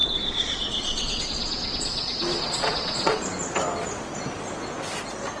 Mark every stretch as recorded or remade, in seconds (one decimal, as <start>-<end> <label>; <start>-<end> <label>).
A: 0.0-3.2 remade; 3.2-5.4 recorded